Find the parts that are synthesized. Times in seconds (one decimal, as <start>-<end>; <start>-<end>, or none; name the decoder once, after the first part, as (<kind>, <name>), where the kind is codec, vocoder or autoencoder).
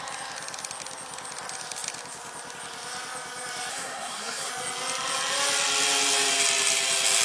3.7-4.5 (codec, SNAC)